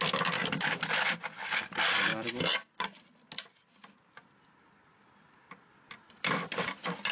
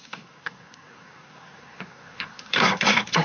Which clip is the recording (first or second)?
first